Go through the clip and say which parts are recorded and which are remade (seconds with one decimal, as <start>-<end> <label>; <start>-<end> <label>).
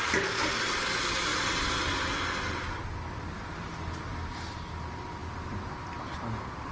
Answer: 0.0-6.7 recorded